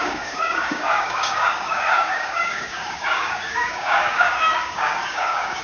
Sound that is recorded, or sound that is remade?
remade